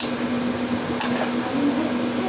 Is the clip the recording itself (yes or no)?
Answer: yes